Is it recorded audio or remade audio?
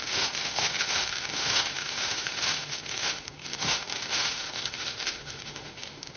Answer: remade